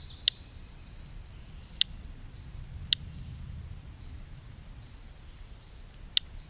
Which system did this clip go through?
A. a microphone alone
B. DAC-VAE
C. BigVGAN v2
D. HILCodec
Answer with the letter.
A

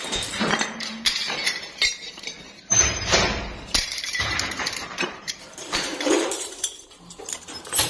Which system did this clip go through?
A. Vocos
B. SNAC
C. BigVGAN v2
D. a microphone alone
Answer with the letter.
C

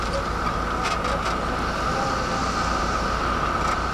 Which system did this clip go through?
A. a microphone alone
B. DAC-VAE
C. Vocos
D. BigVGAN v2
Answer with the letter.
A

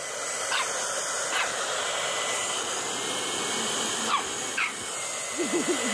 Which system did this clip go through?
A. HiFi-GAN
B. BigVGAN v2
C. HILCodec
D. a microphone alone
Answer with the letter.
D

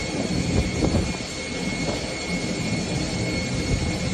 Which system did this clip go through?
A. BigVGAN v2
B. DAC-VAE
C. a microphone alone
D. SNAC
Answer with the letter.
C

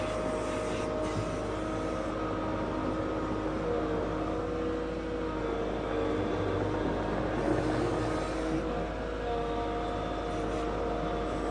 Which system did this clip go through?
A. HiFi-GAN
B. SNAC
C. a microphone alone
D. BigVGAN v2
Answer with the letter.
C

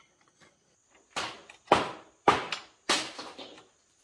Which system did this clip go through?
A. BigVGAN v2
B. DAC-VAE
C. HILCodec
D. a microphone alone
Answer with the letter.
D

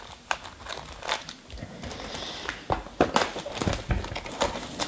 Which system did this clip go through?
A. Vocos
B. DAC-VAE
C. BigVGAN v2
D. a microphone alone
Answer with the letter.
D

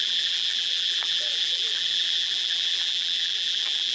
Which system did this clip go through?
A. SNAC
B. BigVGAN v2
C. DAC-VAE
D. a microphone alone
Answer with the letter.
B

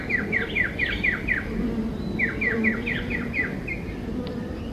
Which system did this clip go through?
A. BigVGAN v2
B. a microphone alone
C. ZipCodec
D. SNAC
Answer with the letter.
A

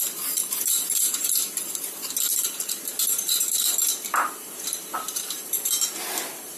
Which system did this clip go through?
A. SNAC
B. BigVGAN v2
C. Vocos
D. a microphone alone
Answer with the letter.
B